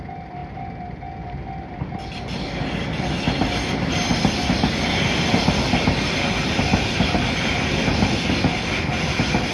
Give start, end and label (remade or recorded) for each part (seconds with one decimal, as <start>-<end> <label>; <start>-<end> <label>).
0.0-9.5 recorded